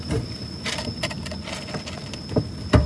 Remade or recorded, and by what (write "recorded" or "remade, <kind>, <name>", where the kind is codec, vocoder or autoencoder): recorded